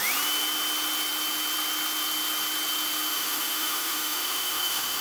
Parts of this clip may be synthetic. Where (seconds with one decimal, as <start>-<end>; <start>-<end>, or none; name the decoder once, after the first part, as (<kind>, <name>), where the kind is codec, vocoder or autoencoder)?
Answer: 3.1-5.0 (autoencoder, DAC-VAE)